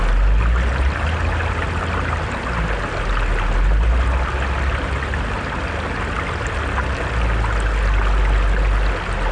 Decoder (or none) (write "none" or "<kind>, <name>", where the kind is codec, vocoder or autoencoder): none